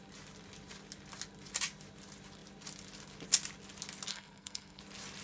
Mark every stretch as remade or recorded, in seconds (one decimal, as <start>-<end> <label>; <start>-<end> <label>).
0.0-4.1 recorded; 4.1-4.8 remade; 4.8-5.2 recorded